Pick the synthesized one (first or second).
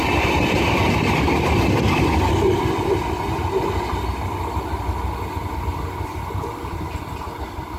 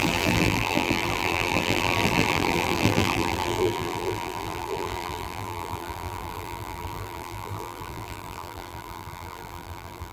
second